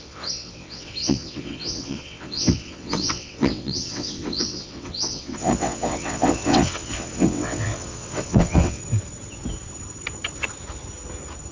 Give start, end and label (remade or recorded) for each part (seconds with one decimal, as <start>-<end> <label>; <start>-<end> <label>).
0.0-8.8 remade; 8.8-11.5 recorded